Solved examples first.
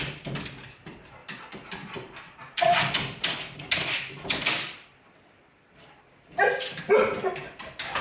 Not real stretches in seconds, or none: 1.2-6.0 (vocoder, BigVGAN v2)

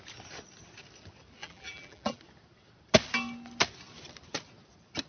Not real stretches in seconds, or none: 1.4-2.2 (vocoder, BigVGAN v2)